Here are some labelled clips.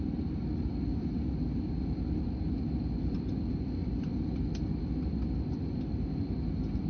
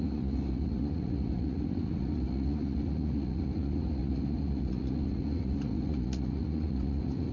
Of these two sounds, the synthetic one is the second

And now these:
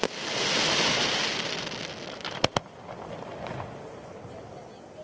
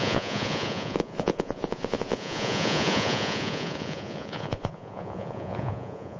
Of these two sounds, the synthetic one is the second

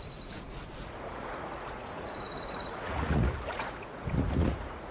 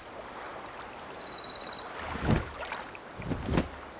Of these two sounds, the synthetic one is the first